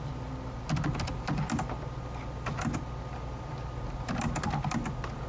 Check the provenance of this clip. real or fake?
real